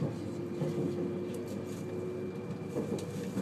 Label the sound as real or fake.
real